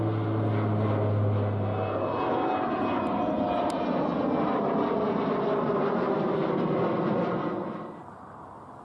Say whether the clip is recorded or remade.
recorded